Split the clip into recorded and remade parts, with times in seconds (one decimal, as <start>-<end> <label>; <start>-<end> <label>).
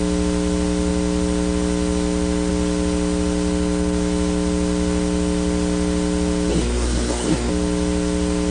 0.0-6.5 recorded; 6.5-7.5 remade; 7.5-8.5 recorded